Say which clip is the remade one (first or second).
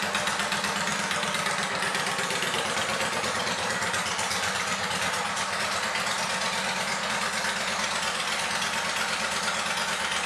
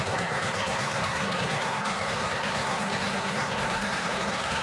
second